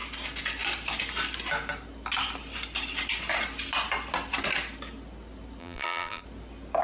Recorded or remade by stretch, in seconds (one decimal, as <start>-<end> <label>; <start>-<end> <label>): 0.0-5.6 recorded; 5.6-6.2 remade; 6.2-6.8 recorded